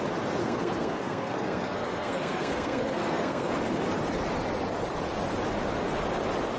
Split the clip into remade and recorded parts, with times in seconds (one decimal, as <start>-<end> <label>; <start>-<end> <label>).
0.0-0.4 recorded; 0.4-3.5 remade; 3.5-6.6 recorded